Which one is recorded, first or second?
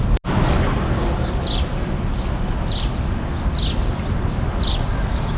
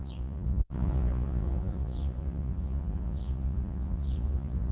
first